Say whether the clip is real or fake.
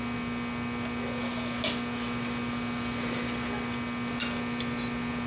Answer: real